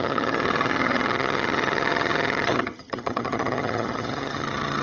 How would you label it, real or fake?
fake